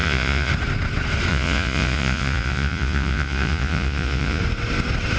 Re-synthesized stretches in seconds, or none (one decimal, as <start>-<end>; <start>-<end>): 0.0-0.5; 1.3-4.4